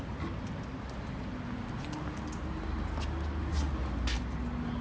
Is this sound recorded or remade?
recorded